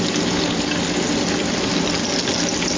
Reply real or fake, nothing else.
real